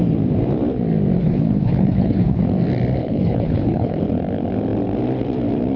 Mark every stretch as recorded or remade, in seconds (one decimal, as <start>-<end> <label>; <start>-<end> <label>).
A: 0.0-1.2 recorded; 1.2-2.4 remade; 2.4-3.0 recorded; 3.0-4.0 remade; 4.0-5.8 recorded